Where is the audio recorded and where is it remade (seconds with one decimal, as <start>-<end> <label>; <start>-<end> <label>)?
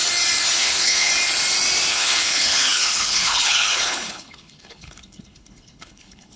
0.0-0.6 recorded; 0.6-1.1 remade; 1.1-1.9 recorded; 1.9-6.4 remade